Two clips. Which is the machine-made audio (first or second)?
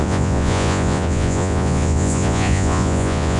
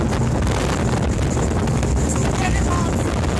first